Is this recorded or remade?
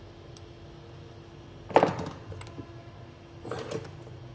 recorded